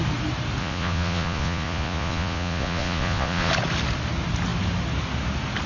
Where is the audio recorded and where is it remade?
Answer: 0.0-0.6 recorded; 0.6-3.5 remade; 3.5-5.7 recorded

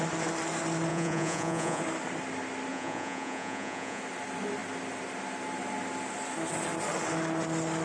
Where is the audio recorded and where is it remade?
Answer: 0.0-0.9 recorded; 0.9-1.8 remade; 1.8-2.7 recorded; 2.7-4.0 remade; 4.0-7.8 recorded

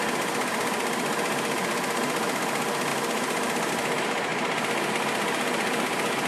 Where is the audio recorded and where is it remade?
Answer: 0.0-6.3 recorded